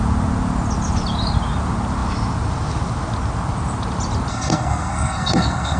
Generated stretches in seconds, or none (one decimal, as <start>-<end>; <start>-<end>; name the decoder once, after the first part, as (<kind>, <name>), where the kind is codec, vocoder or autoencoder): 4.3-5.8 (codec, SNAC)